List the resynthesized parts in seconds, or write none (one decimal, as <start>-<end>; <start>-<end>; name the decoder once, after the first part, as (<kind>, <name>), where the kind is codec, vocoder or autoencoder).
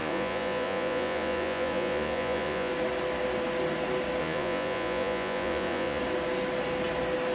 0.0-2.7 (vocoder, Vocos); 4.2-6.0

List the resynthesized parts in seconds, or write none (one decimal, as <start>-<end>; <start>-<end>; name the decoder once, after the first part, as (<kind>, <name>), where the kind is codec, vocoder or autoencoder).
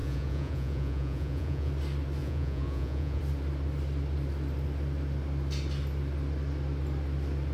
0.0-1.7 (vocoder, Vocos); 2.2-3.2